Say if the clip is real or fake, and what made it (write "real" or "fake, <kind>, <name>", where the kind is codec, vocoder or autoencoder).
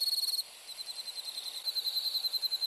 real